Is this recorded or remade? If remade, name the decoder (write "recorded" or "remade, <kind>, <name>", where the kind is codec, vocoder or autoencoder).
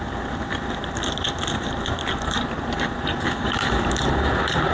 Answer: remade, vocoder, BigVGAN v2